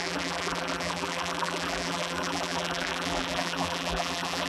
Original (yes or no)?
no